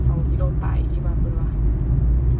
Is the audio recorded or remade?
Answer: recorded